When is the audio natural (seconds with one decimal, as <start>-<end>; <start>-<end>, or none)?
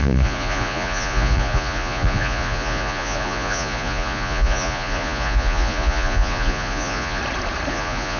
7.2-7.7